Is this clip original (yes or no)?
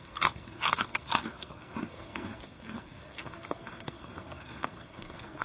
no